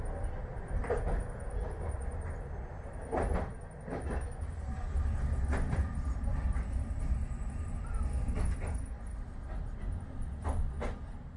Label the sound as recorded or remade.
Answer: recorded